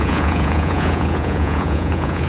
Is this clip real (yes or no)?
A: no